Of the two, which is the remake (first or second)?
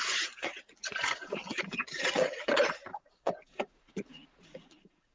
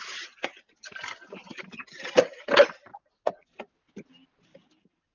first